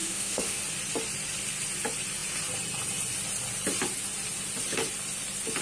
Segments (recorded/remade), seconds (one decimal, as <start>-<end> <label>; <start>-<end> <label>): 0.0-0.6 remade; 0.6-5.6 recorded